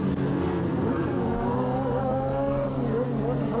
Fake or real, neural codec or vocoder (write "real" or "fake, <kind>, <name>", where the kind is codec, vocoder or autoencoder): fake, codec, SNAC